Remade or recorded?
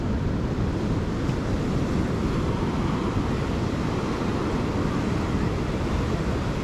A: recorded